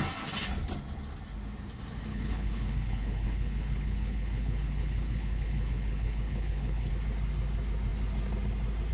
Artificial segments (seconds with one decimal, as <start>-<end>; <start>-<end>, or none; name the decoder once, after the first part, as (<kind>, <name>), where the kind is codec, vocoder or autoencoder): 2.1-6.9 (codec, HILCodec)

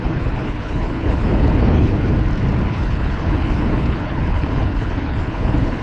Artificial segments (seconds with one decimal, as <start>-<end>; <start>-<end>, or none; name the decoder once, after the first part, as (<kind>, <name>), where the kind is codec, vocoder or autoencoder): 0.0-2.1 (codec, HILCodec); 2.7-5.8

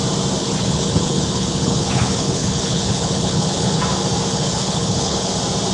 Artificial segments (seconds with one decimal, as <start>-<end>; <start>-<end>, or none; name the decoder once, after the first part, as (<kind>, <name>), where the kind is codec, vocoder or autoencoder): 0.4-3.8 (codec, HILCodec); 4.3-5.3

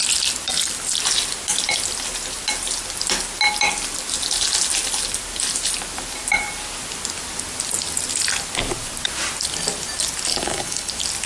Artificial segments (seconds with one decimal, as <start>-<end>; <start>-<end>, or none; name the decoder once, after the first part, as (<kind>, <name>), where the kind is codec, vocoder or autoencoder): 10.3-10.9 (codec, HILCodec)

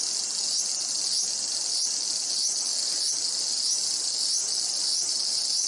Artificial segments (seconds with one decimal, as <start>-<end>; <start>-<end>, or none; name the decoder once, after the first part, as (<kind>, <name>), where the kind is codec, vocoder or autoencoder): none

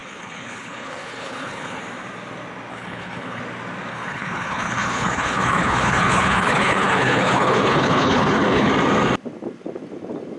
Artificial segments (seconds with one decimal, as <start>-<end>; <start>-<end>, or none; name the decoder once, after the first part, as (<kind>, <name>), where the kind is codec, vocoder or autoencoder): 0.0-1.8 (codec, HILCodec); 2.7-3.4; 3.9-8.7

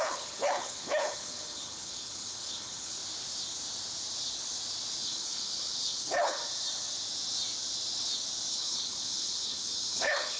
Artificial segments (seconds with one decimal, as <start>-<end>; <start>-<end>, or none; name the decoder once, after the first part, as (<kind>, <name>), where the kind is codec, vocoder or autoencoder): 0.0-3.0 (codec, HILCodec); 5.0-6.4; 8.5-10.4

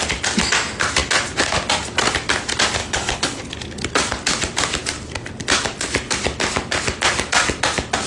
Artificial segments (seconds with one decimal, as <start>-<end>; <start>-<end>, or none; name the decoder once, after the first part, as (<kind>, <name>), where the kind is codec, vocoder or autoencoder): 2.8-3.4 (codec, HILCodec)